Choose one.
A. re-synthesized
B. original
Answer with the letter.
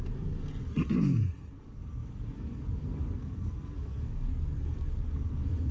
A